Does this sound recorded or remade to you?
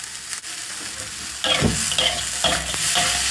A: recorded